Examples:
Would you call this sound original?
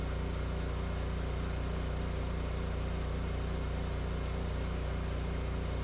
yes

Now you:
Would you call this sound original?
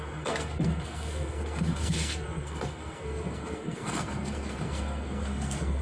no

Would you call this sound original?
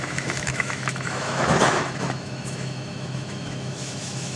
no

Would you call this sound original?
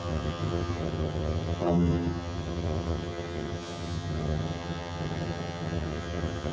no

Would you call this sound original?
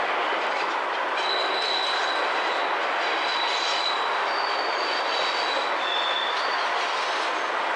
yes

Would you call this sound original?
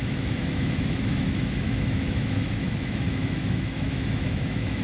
no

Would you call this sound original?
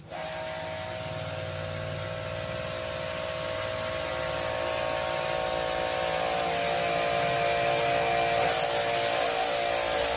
yes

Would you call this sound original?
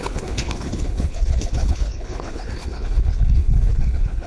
no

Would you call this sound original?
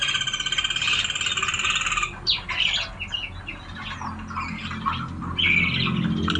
yes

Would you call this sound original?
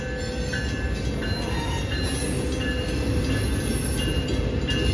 yes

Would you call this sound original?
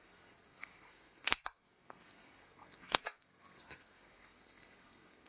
no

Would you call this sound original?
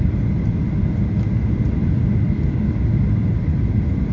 yes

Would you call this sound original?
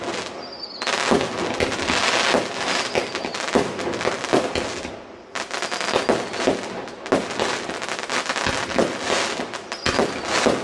yes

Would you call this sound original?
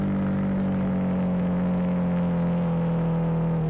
yes